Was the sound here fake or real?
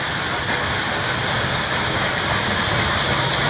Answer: real